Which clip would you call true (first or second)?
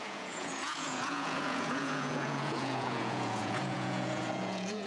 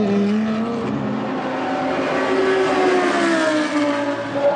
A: second